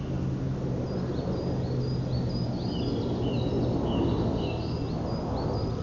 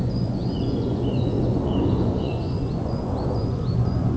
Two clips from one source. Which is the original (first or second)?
first